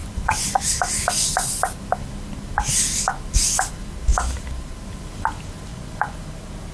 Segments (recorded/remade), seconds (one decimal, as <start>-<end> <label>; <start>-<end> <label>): 0.0-0.6 remade; 0.6-5.7 recorded; 5.7-6.2 remade; 6.2-6.7 recorded